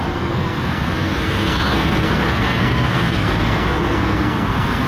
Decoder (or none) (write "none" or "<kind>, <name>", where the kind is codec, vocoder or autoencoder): codec, SNAC